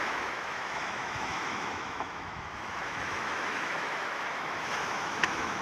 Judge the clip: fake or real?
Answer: fake